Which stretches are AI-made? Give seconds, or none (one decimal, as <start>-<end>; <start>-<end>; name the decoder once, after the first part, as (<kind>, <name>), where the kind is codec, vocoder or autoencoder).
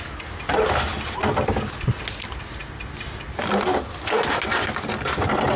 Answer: 0.9-2.0 (vocoder, BigVGAN v2)